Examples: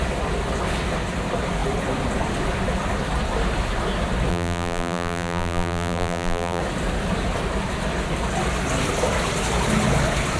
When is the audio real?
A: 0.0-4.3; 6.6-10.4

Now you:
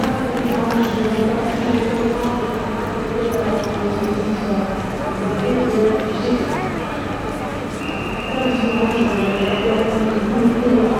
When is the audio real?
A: 0.0-11.0

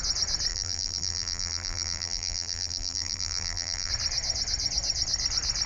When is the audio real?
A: 0.0-0.5; 3.9-5.7

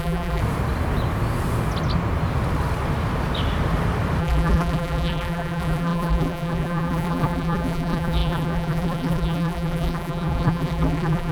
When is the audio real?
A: 0.4-4.2

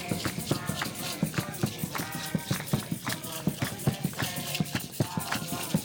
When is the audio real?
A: 0.0-5.8

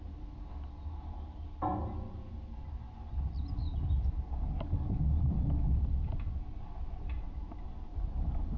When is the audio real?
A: 0.0-7.9

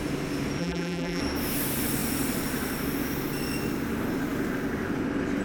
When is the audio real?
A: 0.0-0.6; 1.2-5.4